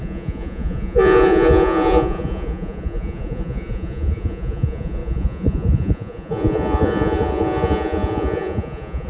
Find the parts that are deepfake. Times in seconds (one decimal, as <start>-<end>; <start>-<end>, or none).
0.0-9.1